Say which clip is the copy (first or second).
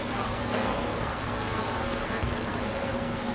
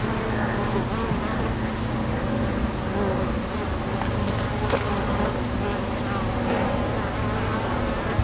first